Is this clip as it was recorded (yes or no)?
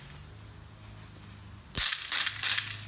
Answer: yes